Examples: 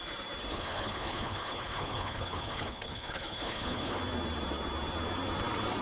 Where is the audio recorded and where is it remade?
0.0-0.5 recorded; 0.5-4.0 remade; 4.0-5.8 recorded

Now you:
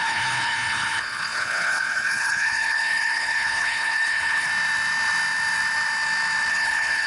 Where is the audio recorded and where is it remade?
0.0-4.5 remade; 4.5-6.5 recorded; 6.5-7.1 remade

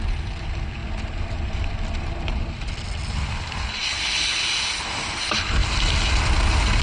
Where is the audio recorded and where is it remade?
0.0-3.9 recorded; 3.9-4.4 remade; 4.4-6.8 recorded

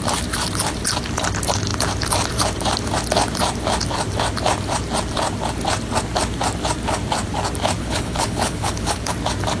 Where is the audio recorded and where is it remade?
0.0-7.8 recorded; 7.8-9.1 remade; 9.1-9.6 recorded